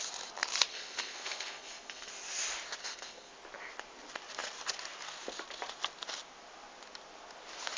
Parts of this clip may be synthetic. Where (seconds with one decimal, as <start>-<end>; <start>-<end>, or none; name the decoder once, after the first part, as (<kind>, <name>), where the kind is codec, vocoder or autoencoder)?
0.7-2.1 (codec, SNAC); 2.8-3.3